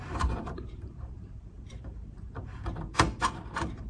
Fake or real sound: fake